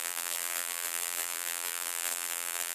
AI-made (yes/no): yes